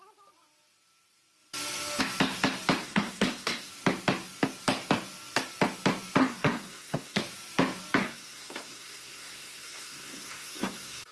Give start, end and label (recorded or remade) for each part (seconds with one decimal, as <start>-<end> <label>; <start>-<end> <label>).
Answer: 0.0-2.8 recorded; 2.8-3.7 remade; 3.7-6.2 recorded; 6.2-7.2 remade; 7.2-8.0 recorded; 8.0-11.1 remade